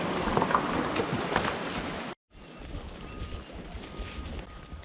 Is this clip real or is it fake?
real